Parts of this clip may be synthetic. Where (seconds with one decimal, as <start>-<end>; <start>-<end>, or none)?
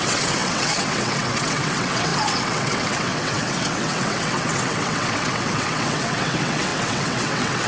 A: 0.0-7.7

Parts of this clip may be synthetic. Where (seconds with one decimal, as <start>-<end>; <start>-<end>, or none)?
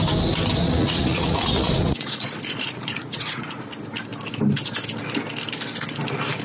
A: 0.6-3.6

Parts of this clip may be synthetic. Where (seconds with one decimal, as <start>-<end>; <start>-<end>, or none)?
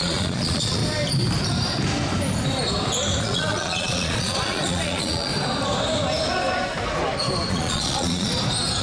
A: 0.0-0.8; 3.2-5.3; 7.5-8.3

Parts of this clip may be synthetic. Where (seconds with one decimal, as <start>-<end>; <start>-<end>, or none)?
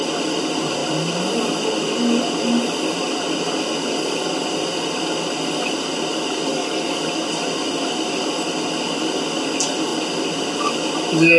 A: 6.5-7.0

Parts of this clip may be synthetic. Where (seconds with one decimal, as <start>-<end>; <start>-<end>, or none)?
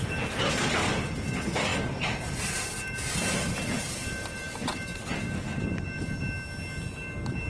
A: none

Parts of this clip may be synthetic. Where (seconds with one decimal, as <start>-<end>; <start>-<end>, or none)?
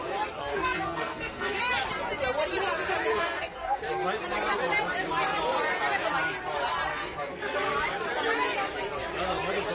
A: 0.5-1.6; 3.1-3.8; 6.9-7.7